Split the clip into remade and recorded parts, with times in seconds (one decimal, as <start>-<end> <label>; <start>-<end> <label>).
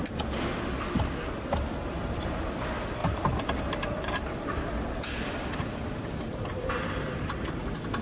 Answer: 0.0-3.0 recorded; 3.0-6.7 remade; 6.7-8.0 recorded